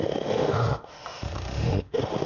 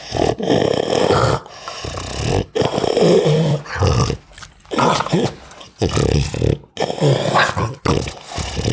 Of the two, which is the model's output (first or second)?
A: first